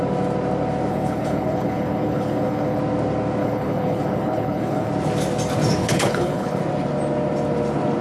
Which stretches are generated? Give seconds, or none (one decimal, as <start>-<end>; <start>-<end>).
0.9-2.8; 3.4-4.9; 5.8-6.6